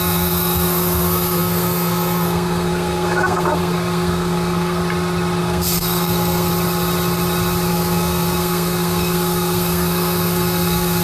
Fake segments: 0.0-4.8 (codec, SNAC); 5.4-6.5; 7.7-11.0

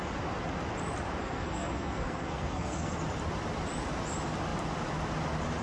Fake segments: 1.2-2.9 (codec, SNAC)

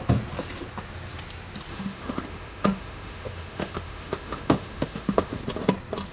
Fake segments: 1.7-5.4 (autoencoder, DAC-VAE)

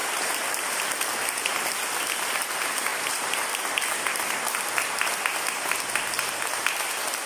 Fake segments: 0.0-0.7 (vocoder, BigVGAN v2); 2.9-3.5

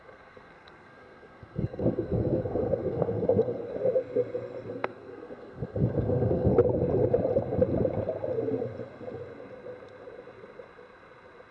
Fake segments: 0.0-3.7 (codec, SNAC); 4.7-6.5

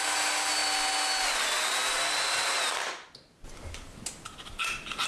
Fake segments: none